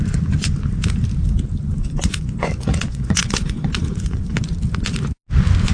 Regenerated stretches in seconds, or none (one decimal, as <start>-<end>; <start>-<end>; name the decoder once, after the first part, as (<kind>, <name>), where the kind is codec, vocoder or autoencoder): 1.7-4.3 (vocoder, Vocos)